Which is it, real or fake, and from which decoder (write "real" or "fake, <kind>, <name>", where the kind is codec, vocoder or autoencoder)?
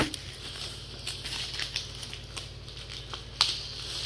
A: real